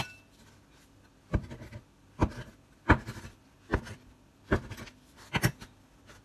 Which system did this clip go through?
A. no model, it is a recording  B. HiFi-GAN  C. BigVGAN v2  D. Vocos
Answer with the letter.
A